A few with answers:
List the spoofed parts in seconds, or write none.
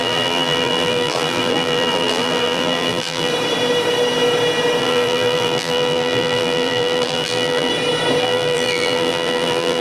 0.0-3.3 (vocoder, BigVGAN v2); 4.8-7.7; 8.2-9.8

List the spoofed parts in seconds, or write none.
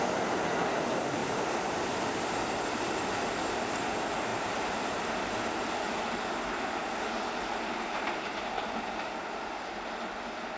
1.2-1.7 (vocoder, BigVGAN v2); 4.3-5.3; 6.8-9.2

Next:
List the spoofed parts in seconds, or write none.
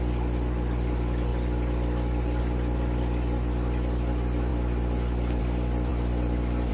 1.3-2.4 (vocoder, BigVGAN v2); 5.9-6.7